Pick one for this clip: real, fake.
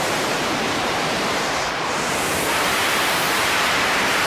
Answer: fake